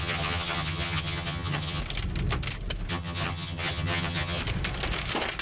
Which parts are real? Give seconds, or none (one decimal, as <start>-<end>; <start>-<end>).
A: 1.8-2.9; 4.4-5.4